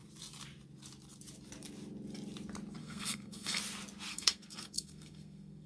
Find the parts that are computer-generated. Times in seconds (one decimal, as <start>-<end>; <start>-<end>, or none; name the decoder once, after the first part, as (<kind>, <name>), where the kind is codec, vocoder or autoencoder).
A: 2.8-3.6 (codec, SNAC); 4.1-5.7